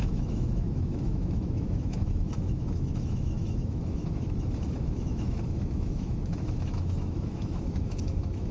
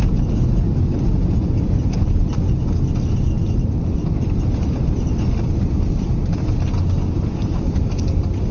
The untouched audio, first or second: second